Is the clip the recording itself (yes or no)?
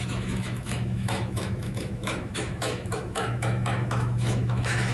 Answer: no